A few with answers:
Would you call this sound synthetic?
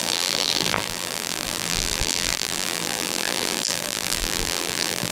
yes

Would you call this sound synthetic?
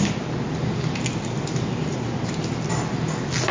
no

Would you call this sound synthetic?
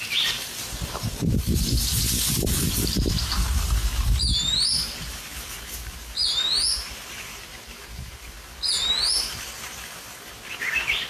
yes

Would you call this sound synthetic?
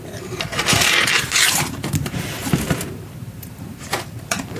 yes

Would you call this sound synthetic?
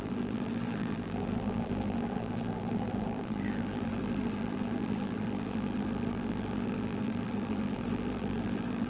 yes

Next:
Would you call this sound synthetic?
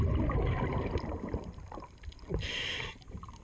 no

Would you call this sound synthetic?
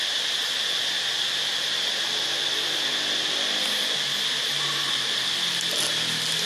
no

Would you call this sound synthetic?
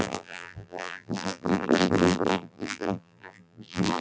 yes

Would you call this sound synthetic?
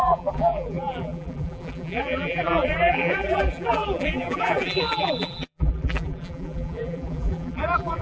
yes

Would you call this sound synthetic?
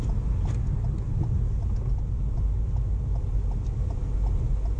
no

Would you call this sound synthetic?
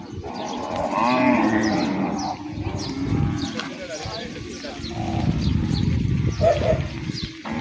no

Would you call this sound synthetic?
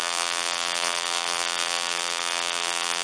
yes